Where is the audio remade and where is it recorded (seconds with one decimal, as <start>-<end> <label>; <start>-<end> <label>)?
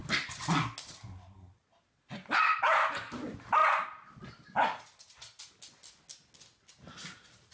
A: 0.0-7.5 recorded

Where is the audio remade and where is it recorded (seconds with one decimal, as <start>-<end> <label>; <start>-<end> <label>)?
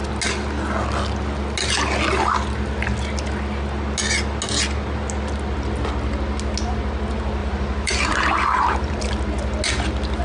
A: 0.0-7.4 recorded; 7.4-9.0 remade; 9.0-10.2 recorded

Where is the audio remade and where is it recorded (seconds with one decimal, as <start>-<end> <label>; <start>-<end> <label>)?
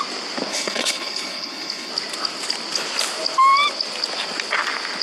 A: 0.0-0.5 recorded; 0.5-1.9 remade; 1.9-5.0 recorded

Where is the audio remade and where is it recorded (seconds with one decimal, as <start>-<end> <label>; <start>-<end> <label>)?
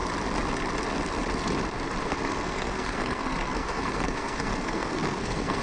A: 0.0-2.0 recorded; 2.0-5.6 remade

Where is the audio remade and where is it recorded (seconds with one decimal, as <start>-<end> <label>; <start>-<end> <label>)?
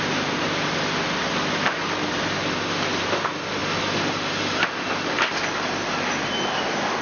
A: 0.0-7.0 recorded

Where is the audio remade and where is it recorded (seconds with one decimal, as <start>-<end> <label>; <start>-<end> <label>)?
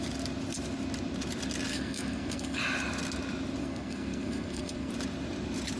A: 0.0-1.7 recorded; 1.7-2.6 remade; 2.6-3.6 recorded; 3.6-4.9 remade; 4.9-5.8 recorded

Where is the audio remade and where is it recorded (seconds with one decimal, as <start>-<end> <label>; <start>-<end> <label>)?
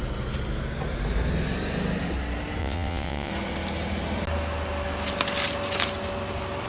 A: 0.0-2.6 recorded; 2.6-3.3 remade; 3.3-6.7 recorded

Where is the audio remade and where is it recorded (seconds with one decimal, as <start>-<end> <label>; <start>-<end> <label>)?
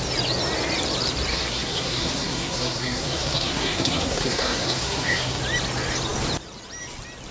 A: 0.0-1.3 recorded; 1.3-5.4 remade; 5.4-7.3 recorded